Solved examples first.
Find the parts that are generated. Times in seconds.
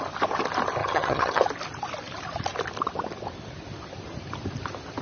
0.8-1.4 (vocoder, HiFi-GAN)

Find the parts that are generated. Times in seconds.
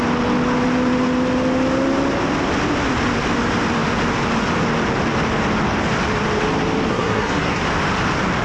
6.9-7.6 (codec, SNAC)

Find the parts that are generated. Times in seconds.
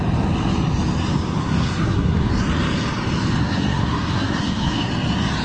1.4-2.3 (codec, SNAC); 3.4-4.9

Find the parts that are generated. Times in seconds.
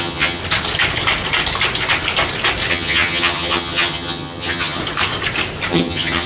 0.0-0.4 (vocoder, HiFi-GAN); 2.7-4.8; 5.7-6.3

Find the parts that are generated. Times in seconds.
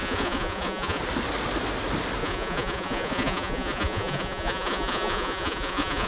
0.0-1.0 (vocoder, Vocos); 2.2-6.1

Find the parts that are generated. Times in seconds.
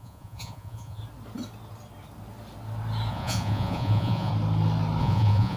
0.0-1.0 (vocoder, Vocos); 3.1-4.3; 5.0-5.6